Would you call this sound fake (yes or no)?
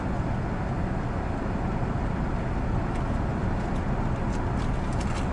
no